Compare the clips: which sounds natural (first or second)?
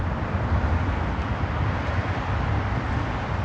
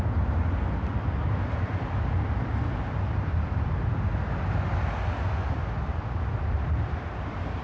second